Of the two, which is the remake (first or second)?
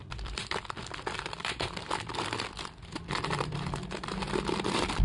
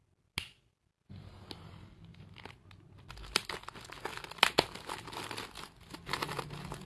first